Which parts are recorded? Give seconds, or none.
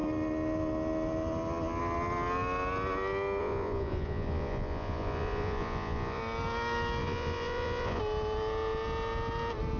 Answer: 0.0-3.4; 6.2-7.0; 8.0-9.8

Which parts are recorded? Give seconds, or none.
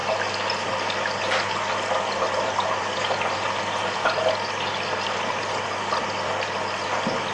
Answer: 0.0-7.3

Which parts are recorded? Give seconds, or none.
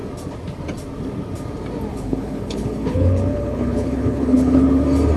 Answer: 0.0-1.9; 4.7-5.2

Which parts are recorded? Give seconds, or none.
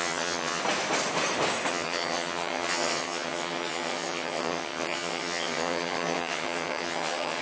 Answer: 0.6-1.7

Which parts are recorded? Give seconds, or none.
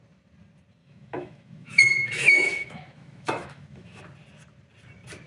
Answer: 0.0-0.8; 4.0-5.3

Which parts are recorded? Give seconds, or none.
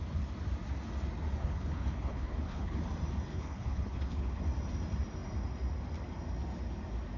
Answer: 0.0-1.4; 2.8-3.3; 4.4-7.2